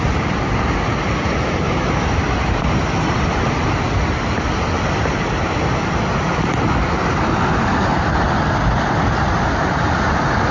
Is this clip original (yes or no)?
yes